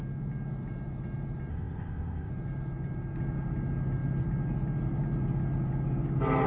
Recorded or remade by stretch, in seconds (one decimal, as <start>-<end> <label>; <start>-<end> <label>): 0.0-1.5 recorded; 1.5-2.3 remade; 2.3-6.5 recorded